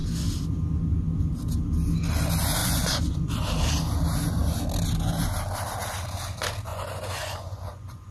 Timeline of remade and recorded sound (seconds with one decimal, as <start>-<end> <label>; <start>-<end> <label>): 0.0-2.6 recorded; 2.6-3.3 remade; 3.3-6.7 recorded; 6.7-8.1 remade